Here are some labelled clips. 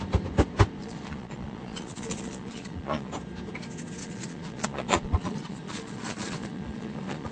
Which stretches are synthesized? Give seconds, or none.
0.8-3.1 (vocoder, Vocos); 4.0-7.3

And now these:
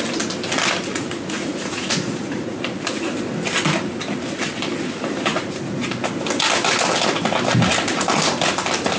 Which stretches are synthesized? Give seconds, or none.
0.9-2.6 (vocoder, Vocos); 5.3-5.9

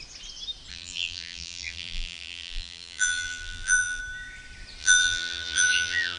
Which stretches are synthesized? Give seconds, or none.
0.7-4.0 (vocoder, BigVGAN v2); 4.8-6.2

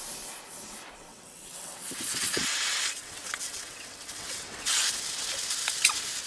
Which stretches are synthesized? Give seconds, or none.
1.1-4.9 (vocoder, WaveNeXt)